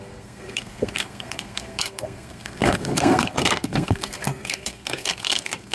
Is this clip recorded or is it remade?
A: remade